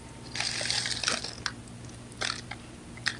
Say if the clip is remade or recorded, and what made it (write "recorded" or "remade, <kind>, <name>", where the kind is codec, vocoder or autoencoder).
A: recorded